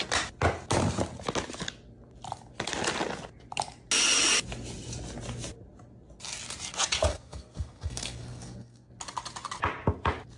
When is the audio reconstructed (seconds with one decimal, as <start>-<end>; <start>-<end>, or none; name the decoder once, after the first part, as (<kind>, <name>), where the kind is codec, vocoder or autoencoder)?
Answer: 7.1-8.9 (codec, SNAC)